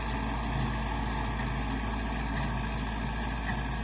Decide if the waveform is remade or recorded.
recorded